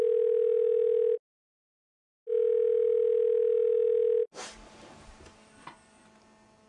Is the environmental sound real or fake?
real